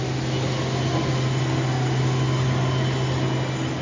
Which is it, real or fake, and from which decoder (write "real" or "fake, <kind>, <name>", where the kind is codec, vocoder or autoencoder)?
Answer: real